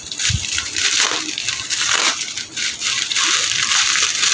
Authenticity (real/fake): real